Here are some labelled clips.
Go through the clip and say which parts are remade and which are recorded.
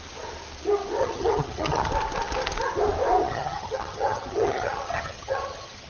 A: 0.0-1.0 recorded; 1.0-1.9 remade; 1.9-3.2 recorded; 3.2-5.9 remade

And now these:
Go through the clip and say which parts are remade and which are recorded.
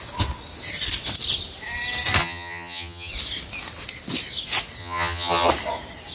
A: 0.0-2.2 recorded; 2.2-3.1 remade; 3.1-4.8 recorded; 4.8-5.5 remade; 5.5-6.1 recorded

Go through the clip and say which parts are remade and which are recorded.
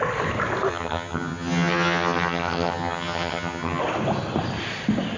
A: 0.0-0.7 recorded; 0.7-3.8 remade; 3.8-5.2 recorded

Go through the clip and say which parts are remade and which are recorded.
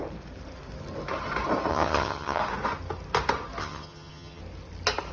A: 0.0-1.7 recorded; 1.7-2.4 remade; 2.4-3.6 recorded; 3.6-4.4 remade; 4.4-5.1 recorded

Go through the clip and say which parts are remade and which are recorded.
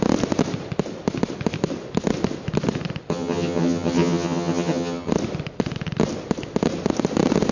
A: 0.0-3.1 recorded; 3.1-5.1 remade; 5.1-7.5 recorded